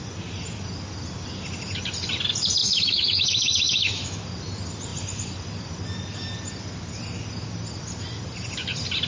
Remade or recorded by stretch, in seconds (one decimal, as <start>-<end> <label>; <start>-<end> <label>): 0.0-2.6 recorded; 2.6-4.2 remade; 4.2-9.1 recorded